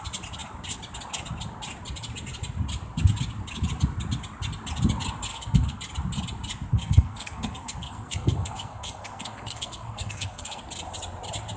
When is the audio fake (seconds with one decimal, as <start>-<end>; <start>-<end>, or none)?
5.3-5.8; 6.7-10.6